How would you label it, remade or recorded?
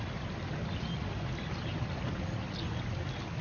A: recorded